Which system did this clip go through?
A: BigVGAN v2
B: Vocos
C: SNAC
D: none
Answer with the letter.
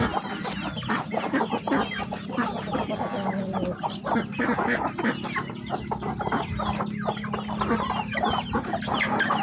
D